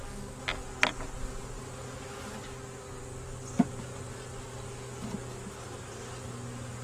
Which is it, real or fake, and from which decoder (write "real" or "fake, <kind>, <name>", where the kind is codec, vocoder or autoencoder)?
real